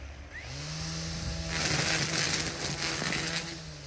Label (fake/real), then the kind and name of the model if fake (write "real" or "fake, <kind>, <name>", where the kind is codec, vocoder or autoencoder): real